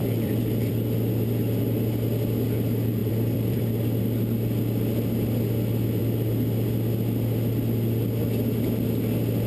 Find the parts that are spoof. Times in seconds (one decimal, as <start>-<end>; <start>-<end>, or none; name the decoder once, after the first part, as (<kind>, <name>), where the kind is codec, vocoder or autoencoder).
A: 0.0-0.7 (vocoder, BigVGAN v2); 3.0-3.6